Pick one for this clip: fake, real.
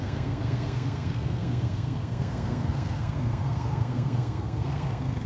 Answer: fake